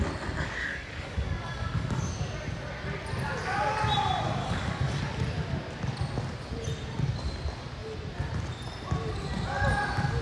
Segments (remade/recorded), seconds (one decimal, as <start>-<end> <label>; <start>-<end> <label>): 0.0-0.6 recorded; 0.6-2.1 remade; 2.1-4.4 recorded; 4.4-5.0 remade; 5.0-10.2 recorded